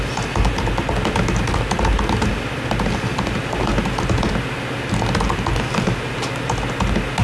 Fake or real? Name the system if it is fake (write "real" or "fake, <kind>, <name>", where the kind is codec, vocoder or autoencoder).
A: real